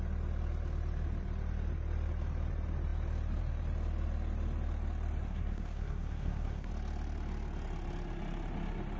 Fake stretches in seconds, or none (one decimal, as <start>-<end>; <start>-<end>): 5.2-6.7